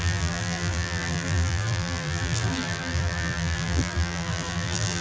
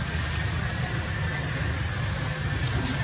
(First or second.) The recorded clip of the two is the second